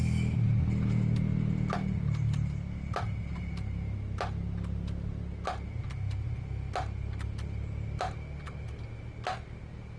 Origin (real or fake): real